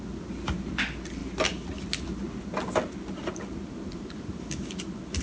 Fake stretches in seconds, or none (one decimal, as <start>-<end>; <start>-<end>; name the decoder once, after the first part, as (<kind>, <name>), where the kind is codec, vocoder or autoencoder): none